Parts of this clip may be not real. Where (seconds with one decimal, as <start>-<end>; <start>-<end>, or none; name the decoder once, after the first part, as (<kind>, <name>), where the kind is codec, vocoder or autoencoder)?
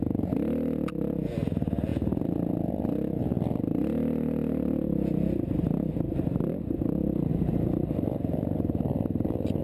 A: 7.3-9.6 (vocoder, BigVGAN v2)